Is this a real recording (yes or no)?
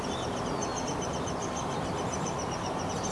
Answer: yes